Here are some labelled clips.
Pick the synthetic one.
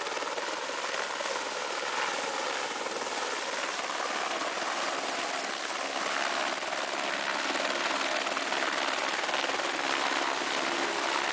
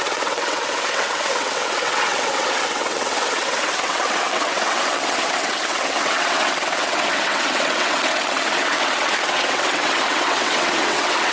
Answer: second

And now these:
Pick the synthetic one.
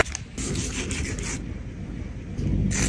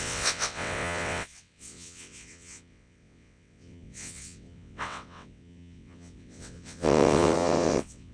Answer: second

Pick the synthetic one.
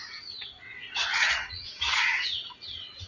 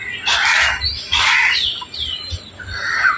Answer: first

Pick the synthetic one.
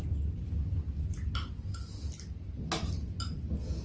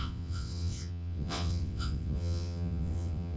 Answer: second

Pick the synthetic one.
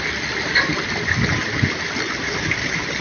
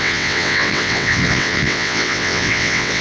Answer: second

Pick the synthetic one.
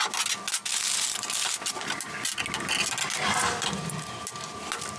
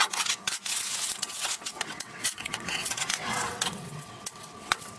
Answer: second